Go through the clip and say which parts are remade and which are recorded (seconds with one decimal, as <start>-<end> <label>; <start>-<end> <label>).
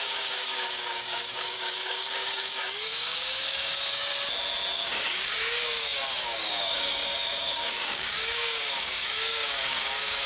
0.0-4.1 remade; 4.1-4.7 recorded; 4.7-10.3 remade